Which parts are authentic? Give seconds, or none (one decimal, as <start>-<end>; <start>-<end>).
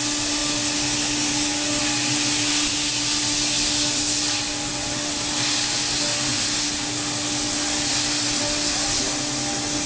0.0-9.9